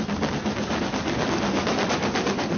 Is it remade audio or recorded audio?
recorded